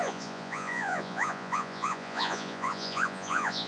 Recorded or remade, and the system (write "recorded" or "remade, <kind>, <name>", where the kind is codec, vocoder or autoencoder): remade, vocoder, Vocos